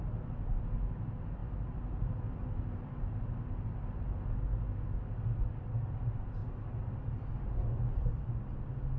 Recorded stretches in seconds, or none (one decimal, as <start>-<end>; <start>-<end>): 0.0-1.4; 4.4-6.4; 7.3-9.0